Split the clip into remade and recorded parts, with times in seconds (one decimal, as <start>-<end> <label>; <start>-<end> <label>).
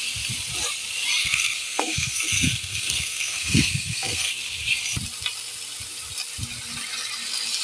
0.0-1.2 recorded; 1.2-4.3 remade; 4.3-7.6 recorded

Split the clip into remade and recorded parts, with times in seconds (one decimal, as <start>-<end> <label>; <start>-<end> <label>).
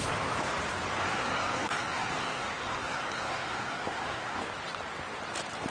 0.0-1.0 recorded; 1.0-4.4 remade; 4.4-5.7 recorded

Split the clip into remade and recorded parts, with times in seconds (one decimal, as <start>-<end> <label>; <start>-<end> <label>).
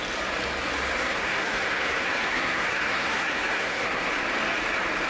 0.0-1.0 recorded; 1.0-4.1 remade; 4.1-5.1 recorded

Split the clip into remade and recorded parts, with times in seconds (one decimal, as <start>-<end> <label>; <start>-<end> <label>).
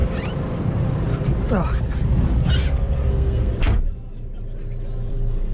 0.0-3.1 recorded; 3.1-3.5 remade; 3.5-5.1 recorded; 5.1-5.5 remade